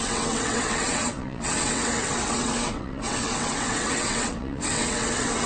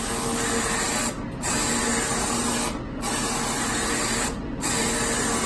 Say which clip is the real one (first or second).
second